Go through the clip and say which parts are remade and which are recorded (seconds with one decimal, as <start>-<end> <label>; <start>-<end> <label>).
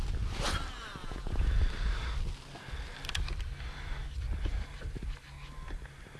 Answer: 0.0-1.0 recorded; 1.0-1.6 remade; 1.6-6.2 recorded